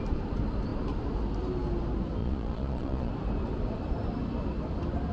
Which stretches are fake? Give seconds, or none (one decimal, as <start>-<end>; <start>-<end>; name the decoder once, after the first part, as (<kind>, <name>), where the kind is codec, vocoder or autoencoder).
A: 2.2-3.1 (vocoder, Vocos)